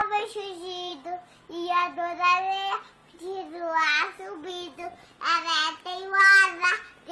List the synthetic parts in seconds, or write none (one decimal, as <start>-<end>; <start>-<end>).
none

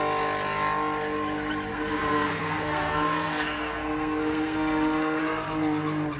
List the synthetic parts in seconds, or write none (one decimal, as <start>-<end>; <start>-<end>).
1.7-5.2

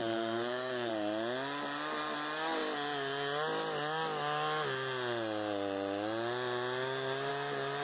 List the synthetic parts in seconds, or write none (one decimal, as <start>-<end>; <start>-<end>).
0.0-0.9